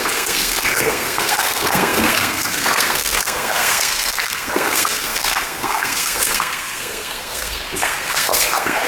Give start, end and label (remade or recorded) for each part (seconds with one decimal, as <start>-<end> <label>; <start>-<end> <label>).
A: 0.0-8.9 remade